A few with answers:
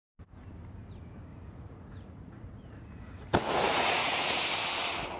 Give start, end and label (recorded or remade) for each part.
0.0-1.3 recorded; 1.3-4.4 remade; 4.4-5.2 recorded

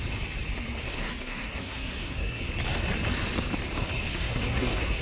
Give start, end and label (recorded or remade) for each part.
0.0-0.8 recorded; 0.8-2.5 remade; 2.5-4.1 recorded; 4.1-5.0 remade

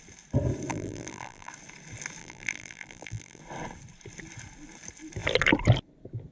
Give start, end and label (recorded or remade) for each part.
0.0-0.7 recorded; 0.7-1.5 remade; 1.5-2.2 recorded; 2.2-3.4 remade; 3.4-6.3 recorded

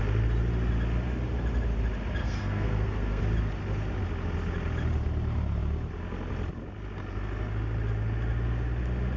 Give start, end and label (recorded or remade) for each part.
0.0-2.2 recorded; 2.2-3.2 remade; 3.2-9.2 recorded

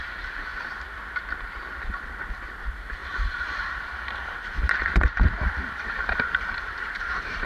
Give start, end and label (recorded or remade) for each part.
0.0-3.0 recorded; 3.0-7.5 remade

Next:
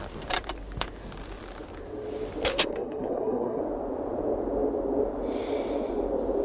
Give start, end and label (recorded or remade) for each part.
0.0-2.5 recorded; 2.5-3.6 remade; 3.6-6.4 recorded